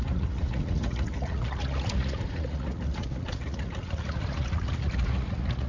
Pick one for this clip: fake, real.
fake